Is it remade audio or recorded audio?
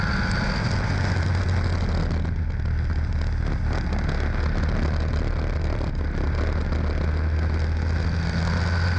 recorded